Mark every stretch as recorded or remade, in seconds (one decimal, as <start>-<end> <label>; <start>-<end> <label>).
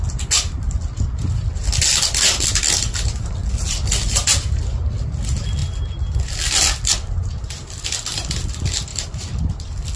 0.0-10.0 recorded